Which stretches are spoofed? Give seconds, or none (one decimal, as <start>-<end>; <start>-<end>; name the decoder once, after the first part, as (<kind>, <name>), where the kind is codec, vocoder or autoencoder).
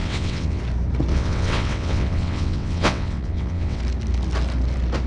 0.0-0.6 (vocoder, WaveNeXt); 1.1-3.8